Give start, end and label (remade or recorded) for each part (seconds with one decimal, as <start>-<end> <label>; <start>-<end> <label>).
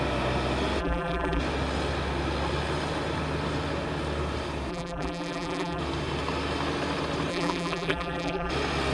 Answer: 0.0-0.8 recorded; 0.8-1.4 remade; 1.4-4.7 recorded; 4.7-5.8 remade; 5.8-7.3 recorded; 7.3-8.5 remade; 8.5-8.9 recorded